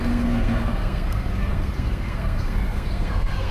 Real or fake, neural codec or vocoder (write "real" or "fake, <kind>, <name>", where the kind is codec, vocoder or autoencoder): fake, codec, SNAC